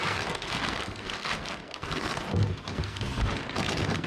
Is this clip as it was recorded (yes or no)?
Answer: no